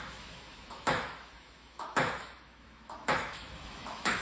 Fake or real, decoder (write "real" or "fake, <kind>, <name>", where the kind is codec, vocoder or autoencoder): fake, autoencoder, DAC-VAE